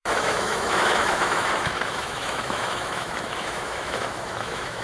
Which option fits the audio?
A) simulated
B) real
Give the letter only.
A